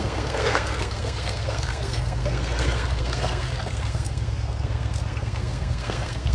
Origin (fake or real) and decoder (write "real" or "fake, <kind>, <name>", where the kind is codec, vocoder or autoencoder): fake, codec, SNAC